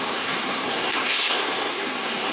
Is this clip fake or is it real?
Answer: fake